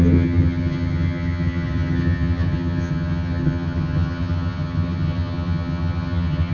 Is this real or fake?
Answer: fake